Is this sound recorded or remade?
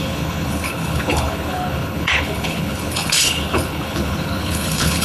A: remade